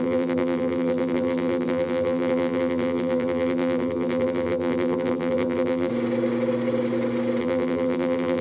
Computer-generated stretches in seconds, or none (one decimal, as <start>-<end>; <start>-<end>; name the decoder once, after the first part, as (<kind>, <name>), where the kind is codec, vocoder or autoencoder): 0.0-5.9 (vocoder, BigVGAN v2); 7.4-8.4